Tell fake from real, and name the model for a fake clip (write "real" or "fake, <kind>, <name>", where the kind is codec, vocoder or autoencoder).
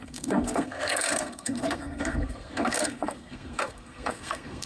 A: fake, codec, SNAC